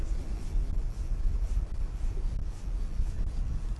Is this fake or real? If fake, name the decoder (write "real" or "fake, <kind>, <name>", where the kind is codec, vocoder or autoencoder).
real